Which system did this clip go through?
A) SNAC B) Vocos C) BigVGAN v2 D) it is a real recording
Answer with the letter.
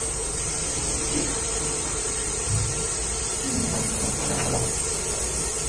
D